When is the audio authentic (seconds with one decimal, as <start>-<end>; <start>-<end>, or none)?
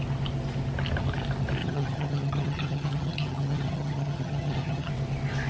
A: 0.0-1.6; 4.9-5.5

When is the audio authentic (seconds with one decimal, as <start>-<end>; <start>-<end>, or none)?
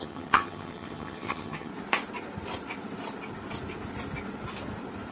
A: 1.7-5.1